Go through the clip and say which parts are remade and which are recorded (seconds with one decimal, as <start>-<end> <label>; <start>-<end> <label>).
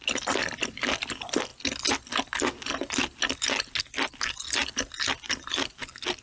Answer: 0.0-6.2 recorded